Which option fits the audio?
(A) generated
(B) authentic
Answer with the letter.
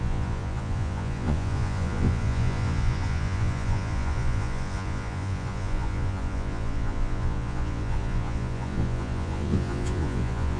A